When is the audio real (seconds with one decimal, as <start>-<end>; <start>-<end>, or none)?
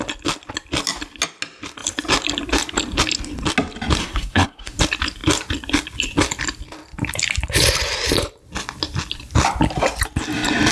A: 0.0-4.0; 4.8-10.7